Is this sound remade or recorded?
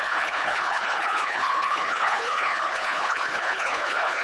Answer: remade